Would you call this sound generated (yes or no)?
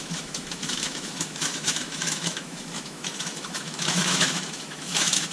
yes